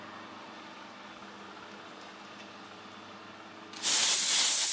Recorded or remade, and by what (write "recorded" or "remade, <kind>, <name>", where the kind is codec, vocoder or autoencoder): recorded